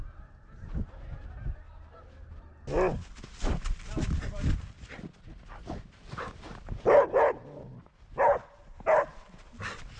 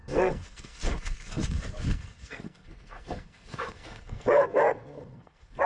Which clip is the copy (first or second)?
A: second